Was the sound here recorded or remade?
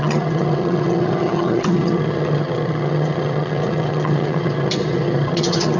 remade